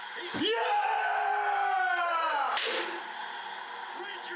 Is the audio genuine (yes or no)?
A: yes